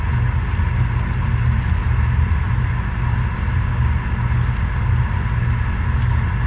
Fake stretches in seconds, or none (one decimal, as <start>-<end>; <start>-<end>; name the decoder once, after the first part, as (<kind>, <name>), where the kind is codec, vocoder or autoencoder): none